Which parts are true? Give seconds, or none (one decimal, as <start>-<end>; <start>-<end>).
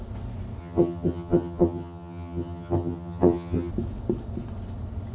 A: 0.0-0.6; 3.7-5.1